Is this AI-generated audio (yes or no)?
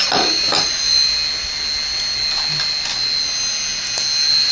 no